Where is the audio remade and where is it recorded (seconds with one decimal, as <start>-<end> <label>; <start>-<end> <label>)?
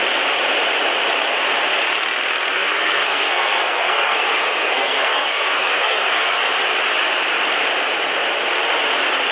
0.0-2.5 recorded; 2.5-6.5 remade; 6.5-9.3 recorded